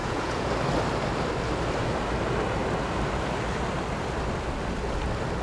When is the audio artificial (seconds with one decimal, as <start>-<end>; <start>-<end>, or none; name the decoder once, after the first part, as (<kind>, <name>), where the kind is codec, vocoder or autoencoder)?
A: 0.0-0.5 (vocoder, Vocos)